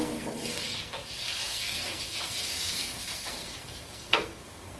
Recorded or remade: remade